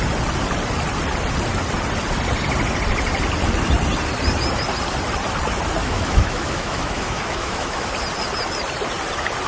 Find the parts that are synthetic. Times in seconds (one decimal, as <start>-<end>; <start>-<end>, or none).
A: 5.8-7.9

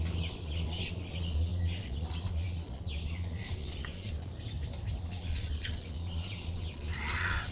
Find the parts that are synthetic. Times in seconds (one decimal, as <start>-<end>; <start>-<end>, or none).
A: 0.0-4.3; 5.0-7.5

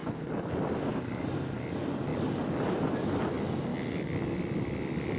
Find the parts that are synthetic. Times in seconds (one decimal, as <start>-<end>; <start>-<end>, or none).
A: 0.0-0.5

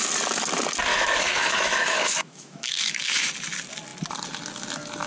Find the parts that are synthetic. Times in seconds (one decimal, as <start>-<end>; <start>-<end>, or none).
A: 0.9-3.3

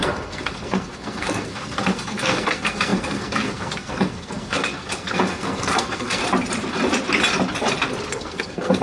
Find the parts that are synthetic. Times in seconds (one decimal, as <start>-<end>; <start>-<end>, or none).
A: 0.0-6.2; 8.1-8.8

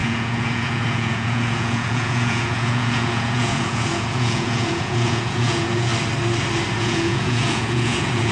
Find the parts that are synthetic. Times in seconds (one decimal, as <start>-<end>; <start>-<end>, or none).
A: 0.0-5.9; 6.8-8.3

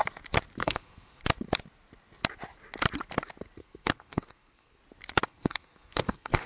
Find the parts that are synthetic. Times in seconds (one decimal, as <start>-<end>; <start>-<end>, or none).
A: 0.6-1.2; 3.6-4.8; 5.3-6.5